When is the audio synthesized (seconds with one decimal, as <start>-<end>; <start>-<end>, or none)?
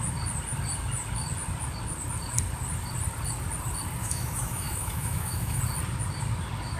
4.0-5.6